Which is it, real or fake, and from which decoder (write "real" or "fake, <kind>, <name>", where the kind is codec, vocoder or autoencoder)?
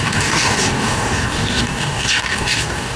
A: fake, codec, DAC